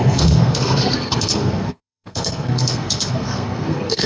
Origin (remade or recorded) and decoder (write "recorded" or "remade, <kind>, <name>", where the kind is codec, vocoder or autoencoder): remade, codec, SNAC